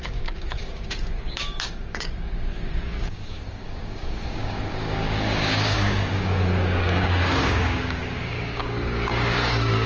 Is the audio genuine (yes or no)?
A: no